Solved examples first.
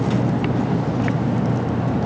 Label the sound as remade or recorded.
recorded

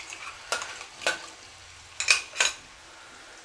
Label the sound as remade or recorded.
recorded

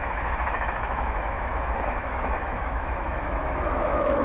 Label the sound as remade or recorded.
remade